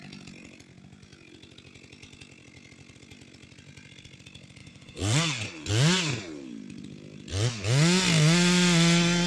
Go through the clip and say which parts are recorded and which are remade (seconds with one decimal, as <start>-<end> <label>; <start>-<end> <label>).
0.0-4.6 recorded; 4.6-5.7 remade; 5.7-9.3 recorded